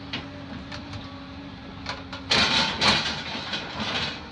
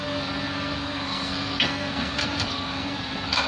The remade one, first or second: second